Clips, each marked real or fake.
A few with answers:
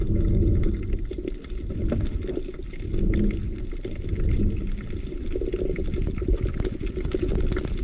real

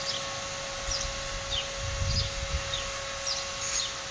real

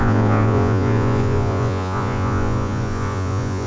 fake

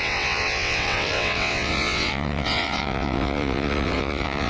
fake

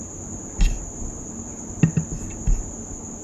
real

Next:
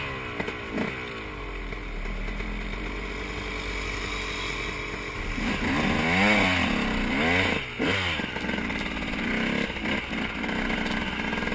real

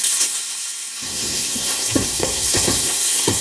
fake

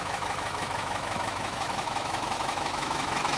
fake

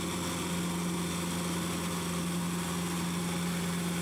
real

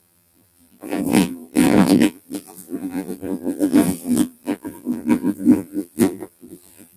fake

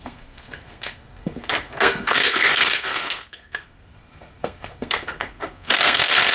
fake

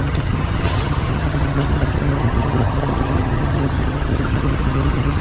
fake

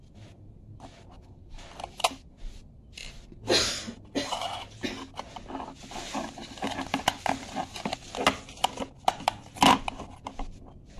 real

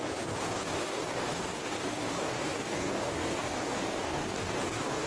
fake